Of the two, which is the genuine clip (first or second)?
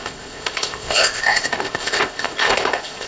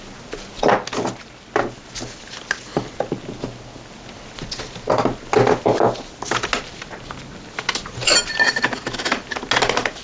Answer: second